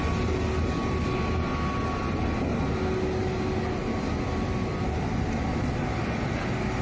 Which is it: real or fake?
real